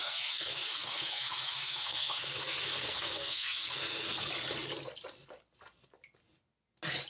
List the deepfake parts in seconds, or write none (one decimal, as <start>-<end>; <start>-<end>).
0.0-4.3